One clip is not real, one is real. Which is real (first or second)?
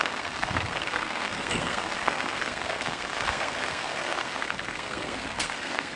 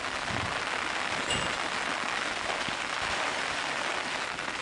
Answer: second